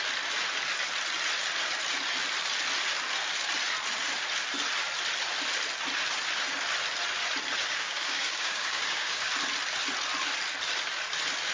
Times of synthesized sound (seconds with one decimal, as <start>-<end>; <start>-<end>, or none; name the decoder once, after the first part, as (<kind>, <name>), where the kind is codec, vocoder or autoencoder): 7.6-9.3 (codec, DAC)